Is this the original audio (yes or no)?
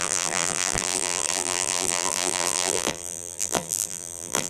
no